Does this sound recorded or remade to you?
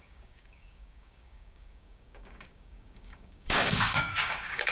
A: remade